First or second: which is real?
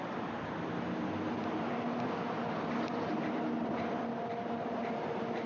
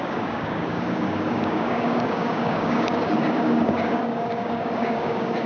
first